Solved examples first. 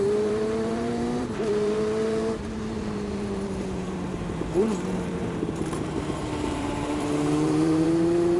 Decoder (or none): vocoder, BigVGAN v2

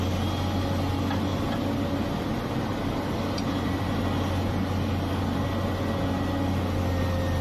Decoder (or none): none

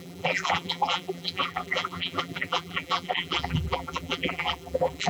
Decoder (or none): vocoder, BigVGAN v2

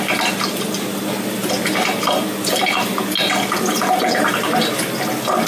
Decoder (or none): none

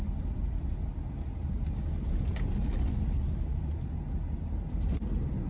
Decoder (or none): none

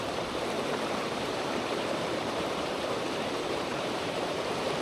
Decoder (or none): vocoder, BigVGAN v2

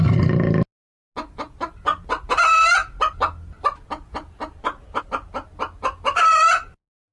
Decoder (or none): none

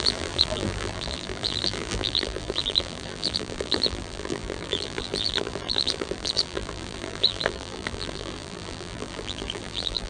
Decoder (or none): vocoder, BigVGAN v2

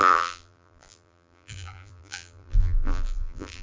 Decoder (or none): vocoder, BigVGAN v2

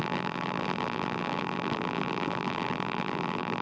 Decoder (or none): vocoder, BigVGAN v2